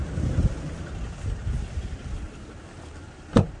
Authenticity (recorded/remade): recorded